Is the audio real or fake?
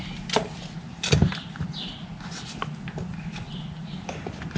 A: real